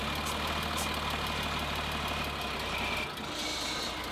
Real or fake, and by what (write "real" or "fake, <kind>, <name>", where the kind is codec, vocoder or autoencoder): real